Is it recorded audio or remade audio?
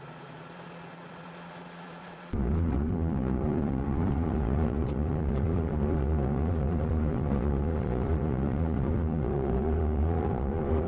remade